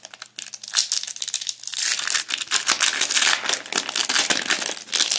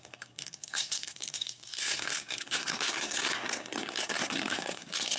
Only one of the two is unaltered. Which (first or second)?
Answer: first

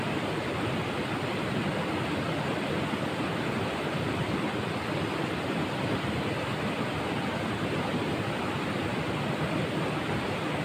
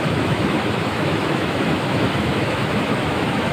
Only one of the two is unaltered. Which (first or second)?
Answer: first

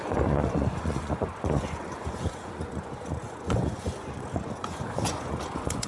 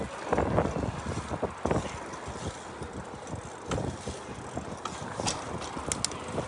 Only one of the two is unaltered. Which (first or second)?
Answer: second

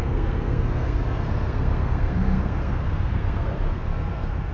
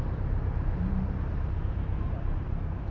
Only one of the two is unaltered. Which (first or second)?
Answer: second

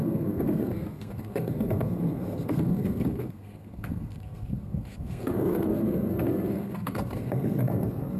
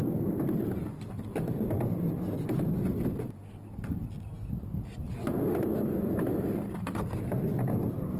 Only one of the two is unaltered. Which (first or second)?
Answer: second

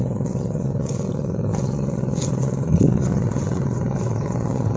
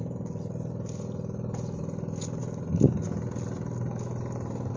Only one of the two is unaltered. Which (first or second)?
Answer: second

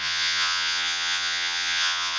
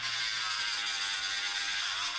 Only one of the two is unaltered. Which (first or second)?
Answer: second